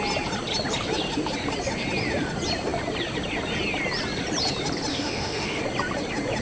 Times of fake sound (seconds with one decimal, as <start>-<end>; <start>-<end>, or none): 4.9-5.6